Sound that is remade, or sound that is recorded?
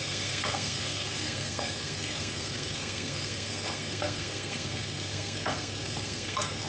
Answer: remade